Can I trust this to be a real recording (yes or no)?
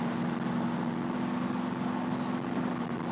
yes